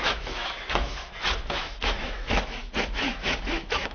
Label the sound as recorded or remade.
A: remade